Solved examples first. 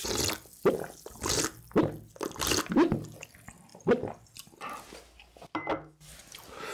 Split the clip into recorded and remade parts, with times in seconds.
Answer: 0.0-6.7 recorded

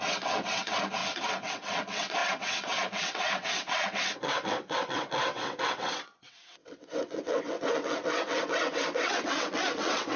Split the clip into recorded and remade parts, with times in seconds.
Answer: 0.0-10.2 remade

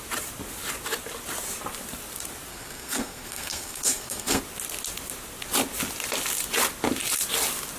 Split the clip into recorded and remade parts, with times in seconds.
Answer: 0.0-2.5 recorded; 2.5-4.4 remade; 4.4-7.8 recorded

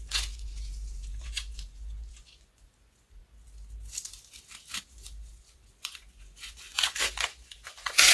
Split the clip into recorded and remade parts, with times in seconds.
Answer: 0.0-3.2 remade; 3.2-4.8 recorded; 4.8-8.1 remade